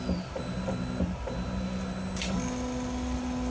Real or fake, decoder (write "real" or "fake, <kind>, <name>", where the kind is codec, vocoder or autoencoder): real